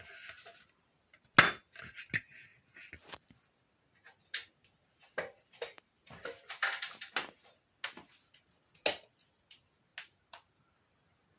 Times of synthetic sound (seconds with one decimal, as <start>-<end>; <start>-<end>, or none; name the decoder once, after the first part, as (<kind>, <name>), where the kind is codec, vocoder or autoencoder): none